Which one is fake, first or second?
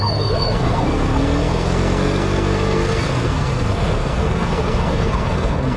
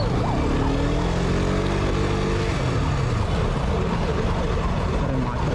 first